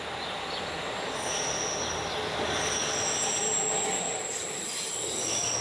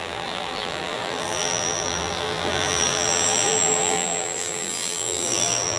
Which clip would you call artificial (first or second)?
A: second